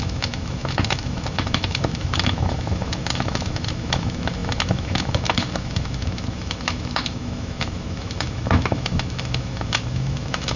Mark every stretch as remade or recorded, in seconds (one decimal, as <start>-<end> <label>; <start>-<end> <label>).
0.0-10.6 remade